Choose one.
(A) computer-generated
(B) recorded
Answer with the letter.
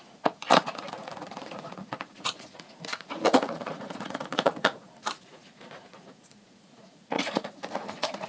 A